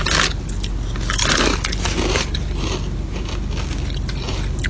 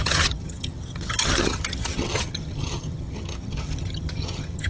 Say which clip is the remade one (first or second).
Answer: second